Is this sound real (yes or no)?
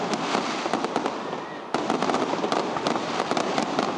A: yes